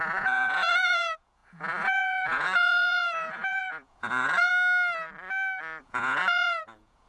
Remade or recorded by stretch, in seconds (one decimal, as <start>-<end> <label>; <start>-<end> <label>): 0.0-4.5 remade; 4.5-5.8 recorded; 5.8-7.1 remade